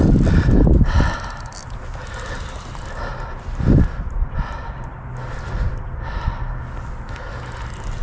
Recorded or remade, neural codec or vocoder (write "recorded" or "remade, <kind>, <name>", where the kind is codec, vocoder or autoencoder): recorded